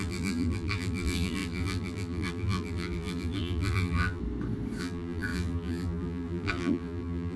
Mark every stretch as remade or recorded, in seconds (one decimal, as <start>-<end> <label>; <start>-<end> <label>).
0.0-4.2 remade; 4.2-4.8 recorded; 4.8-7.4 remade